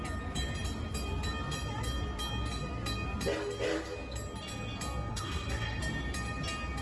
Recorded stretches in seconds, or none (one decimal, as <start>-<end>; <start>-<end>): 0.0-5.1; 5.8-6.8